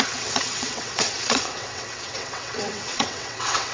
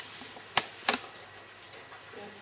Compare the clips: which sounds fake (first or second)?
first